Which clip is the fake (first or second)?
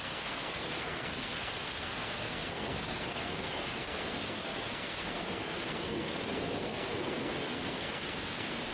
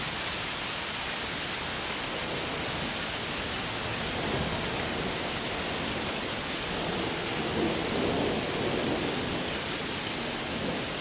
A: first